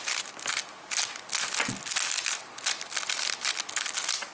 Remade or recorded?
recorded